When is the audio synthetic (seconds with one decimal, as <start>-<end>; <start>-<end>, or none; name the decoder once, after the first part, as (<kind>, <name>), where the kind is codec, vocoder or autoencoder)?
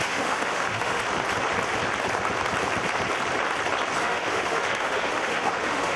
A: 0.0-1.0 (autoencoder, DAC-VAE); 4.0-6.0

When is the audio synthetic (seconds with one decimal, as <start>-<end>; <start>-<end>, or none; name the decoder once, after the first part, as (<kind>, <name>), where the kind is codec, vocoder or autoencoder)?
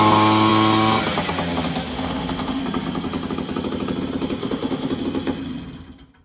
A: 1.9-2.6 (autoencoder, DAC-VAE); 4.4-4.9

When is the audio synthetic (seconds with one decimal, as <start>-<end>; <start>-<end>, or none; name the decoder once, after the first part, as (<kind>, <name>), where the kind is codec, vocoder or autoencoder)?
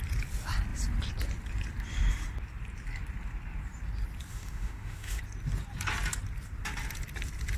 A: 4.3-5.2 (autoencoder, DAC-VAE)